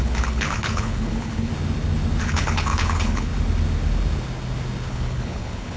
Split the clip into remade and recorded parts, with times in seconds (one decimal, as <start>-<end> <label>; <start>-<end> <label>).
0.0-1.5 remade; 1.5-2.2 recorded; 2.2-3.3 remade; 3.3-4.9 recorded; 4.9-5.8 remade